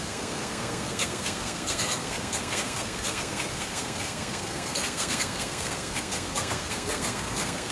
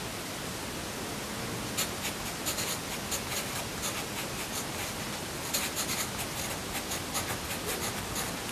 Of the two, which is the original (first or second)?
second